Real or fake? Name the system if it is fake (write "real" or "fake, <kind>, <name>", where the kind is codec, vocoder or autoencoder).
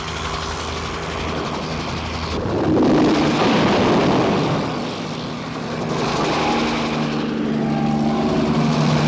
real